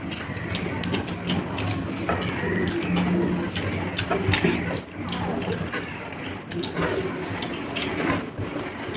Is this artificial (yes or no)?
no